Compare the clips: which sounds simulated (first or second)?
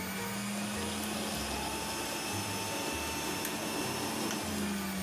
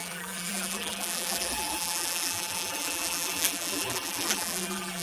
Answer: second